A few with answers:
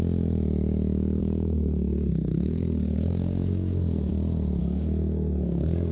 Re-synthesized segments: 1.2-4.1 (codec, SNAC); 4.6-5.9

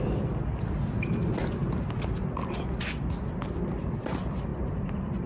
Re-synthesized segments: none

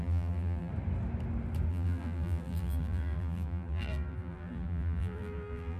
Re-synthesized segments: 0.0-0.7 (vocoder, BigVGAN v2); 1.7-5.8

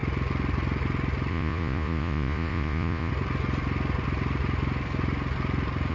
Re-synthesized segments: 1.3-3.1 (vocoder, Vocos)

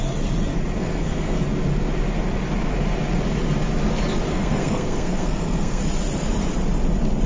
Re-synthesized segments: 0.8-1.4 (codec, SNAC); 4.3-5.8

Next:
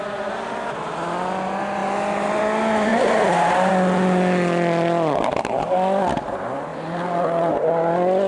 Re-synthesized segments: 2.9-3.7 (vocoder, BigVGAN v2)